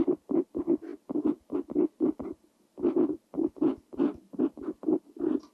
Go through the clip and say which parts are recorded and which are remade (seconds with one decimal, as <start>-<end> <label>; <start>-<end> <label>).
0.0-5.5 recorded